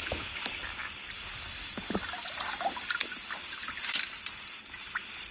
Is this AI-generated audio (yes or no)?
no